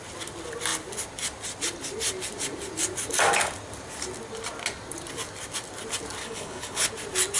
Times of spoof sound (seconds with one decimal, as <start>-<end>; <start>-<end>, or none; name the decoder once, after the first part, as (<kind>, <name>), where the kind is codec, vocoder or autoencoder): 6.2-6.9 (codec, HILCodec)